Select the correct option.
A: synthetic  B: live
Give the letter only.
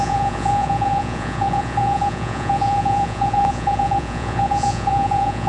A